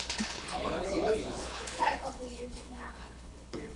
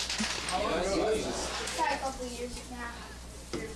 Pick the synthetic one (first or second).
first